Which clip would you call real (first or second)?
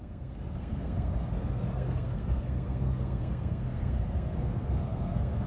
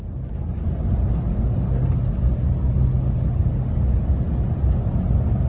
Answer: second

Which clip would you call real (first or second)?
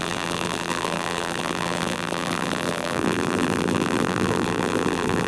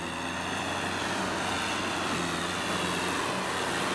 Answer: second